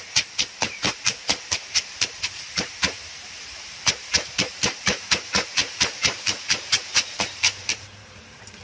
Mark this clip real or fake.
fake